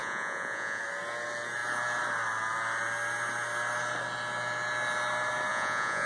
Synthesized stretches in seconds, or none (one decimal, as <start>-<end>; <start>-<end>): 0.0-0.8; 5.5-6.1

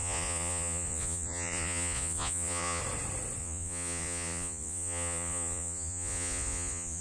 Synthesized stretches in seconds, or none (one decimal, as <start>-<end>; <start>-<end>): 0.0-2.8; 3.4-7.0